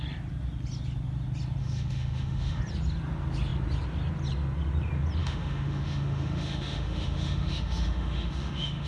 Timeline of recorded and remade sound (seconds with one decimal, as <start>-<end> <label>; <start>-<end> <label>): 0.0-1.6 recorded; 1.6-2.6 remade; 2.6-5.2 recorded; 5.2-8.9 remade